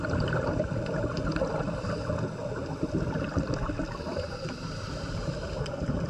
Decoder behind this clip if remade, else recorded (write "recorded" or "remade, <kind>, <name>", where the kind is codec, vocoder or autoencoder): remade, vocoder, BigVGAN v2